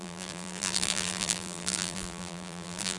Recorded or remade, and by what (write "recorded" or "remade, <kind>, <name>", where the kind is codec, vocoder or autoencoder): remade, vocoder, BigVGAN v2